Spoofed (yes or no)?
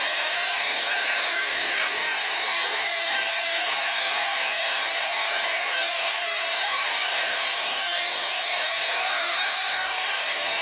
yes